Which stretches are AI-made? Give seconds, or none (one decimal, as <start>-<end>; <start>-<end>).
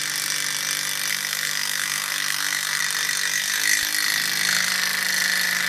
1.1-2.8